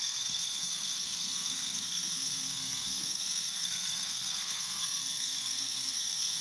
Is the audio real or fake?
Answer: fake